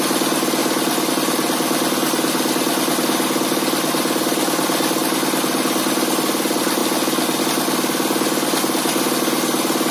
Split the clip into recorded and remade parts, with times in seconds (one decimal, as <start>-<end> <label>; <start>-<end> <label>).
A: 0.0-9.9 recorded

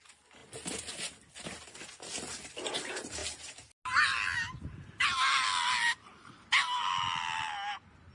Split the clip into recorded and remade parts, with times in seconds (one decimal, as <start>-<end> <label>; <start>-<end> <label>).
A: 0.0-8.1 recorded